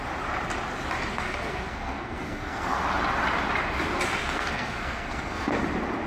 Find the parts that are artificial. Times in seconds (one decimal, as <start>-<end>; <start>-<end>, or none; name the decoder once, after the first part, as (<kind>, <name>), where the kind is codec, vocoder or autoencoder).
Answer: 1.1-2.8 (codec, SNAC); 4.2-5.6